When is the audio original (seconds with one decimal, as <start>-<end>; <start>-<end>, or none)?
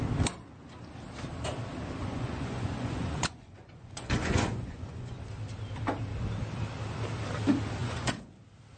0.0-2.0; 5.2-7.8; 8.3-8.8